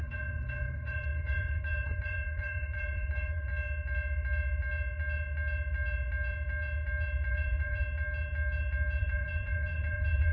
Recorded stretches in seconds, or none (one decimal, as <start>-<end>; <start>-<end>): 3.5-7.3; 7.8-9.0